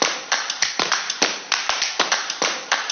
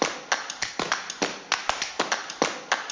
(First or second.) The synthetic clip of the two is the first